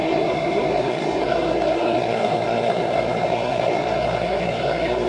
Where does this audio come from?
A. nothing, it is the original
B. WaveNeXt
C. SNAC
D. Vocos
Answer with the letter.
C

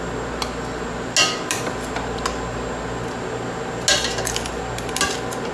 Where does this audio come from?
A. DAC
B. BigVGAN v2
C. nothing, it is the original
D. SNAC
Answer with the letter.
C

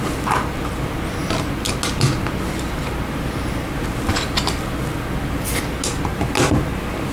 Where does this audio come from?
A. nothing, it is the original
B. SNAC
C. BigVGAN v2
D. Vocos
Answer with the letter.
A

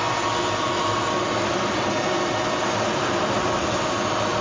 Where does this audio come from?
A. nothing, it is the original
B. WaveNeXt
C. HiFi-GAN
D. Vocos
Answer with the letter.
A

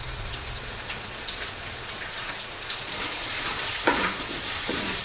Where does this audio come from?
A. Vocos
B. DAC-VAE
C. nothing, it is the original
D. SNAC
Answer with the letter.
A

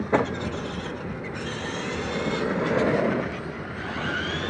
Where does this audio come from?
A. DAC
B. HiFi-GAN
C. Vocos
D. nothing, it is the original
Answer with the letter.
D